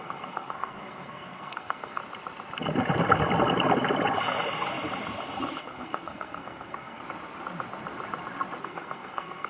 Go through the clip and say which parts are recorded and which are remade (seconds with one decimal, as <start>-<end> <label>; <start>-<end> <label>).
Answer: 0.0-2.0 remade; 2.0-5.6 recorded; 5.6-7.0 remade; 7.0-8.6 recorded; 8.6-9.5 remade